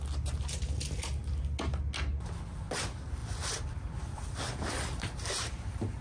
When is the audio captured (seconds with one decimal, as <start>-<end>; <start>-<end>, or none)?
0.0-3.2